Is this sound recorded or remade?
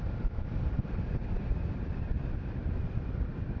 recorded